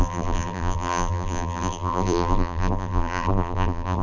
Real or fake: fake